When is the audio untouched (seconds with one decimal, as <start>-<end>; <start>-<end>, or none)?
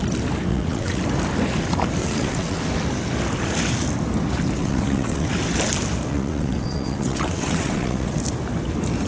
0.0-0.5; 1.0-2.0; 2.6-4.6; 5.3-6.1; 8.2-9.1